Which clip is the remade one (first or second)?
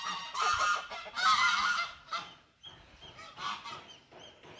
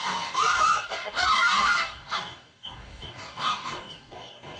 second